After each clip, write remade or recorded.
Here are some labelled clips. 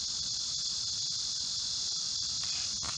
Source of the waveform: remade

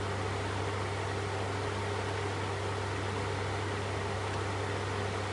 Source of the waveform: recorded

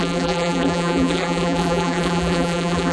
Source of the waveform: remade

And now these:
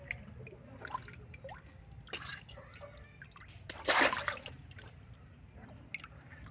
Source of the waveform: recorded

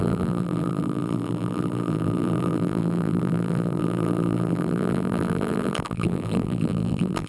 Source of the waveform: remade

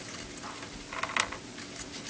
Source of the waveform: recorded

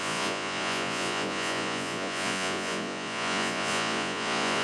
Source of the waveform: remade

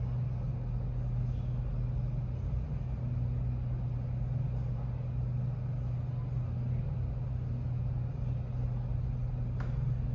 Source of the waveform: recorded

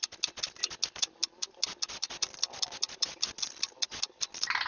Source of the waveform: recorded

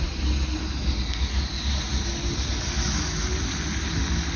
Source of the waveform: recorded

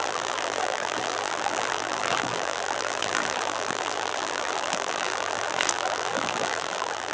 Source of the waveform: remade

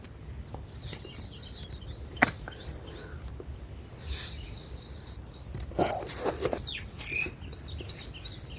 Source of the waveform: recorded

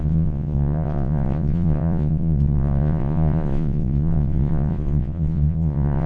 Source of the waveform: remade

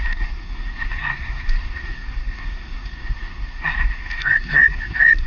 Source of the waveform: remade